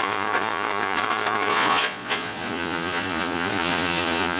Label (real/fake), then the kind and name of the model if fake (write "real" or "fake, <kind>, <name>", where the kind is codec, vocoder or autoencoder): fake, vocoder, Vocos